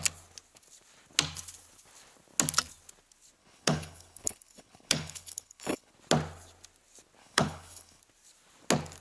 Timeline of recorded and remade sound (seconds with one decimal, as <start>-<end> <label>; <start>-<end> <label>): 0.0-3.4 recorded; 3.4-5.9 remade; 5.9-7.2 recorded; 7.2-8.0 remade; 8.0-9.0 recorded